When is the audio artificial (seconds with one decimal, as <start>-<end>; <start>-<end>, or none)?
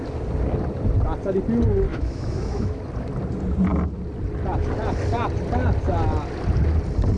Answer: 1.9-2.8